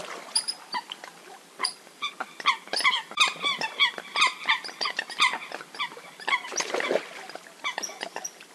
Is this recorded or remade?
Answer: remade